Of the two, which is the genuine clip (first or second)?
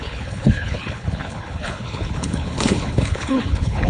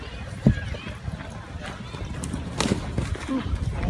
second